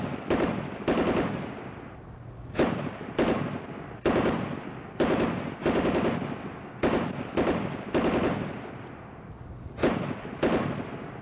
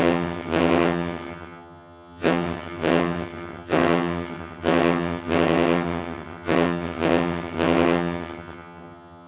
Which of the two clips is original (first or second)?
first